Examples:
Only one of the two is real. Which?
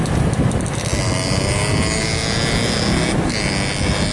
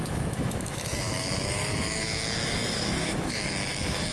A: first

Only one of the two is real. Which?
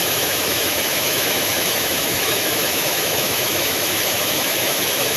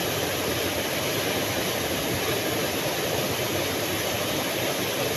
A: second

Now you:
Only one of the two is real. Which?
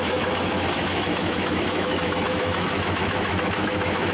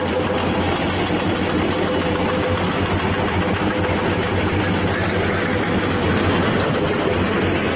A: second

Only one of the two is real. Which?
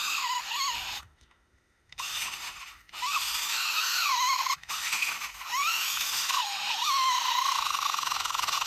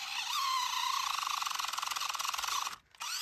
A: second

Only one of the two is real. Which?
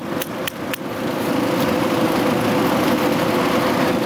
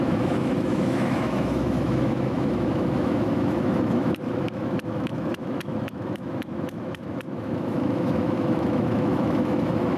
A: first